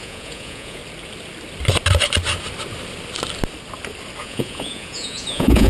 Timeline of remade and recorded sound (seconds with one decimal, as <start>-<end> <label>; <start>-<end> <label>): 0.0-0.8 remade; 0.8-4.2 recorded; 4.2-5.7 remade